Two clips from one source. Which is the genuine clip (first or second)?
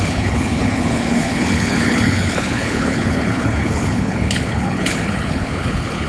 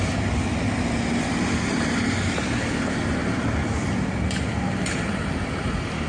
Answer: second